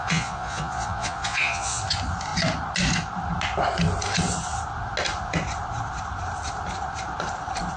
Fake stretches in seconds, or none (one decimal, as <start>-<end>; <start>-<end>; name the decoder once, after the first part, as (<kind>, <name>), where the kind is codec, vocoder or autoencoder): 0.0-1.8 (vocoder, Vocos)